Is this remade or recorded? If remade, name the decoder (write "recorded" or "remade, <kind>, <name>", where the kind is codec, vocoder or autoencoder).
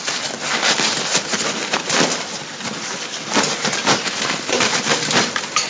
recorded